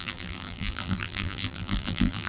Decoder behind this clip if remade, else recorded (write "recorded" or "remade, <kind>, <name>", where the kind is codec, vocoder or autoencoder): remade, vocoder, BigVGAN v2